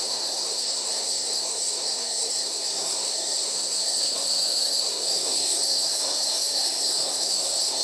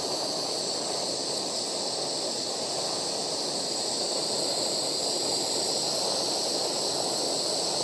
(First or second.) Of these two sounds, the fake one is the first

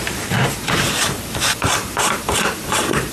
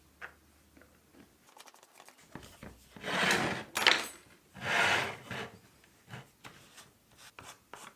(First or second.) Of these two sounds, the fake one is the first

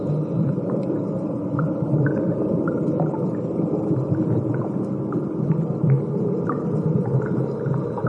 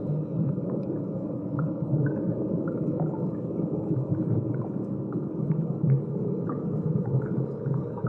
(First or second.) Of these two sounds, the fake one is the second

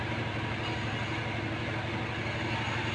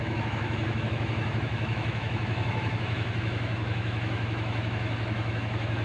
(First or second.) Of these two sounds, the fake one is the second